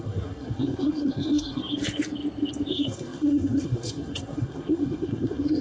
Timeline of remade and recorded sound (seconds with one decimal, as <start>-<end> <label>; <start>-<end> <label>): 0.0-1.6 remade; 1.6-2.7 recorded; 2.7-5.6 remade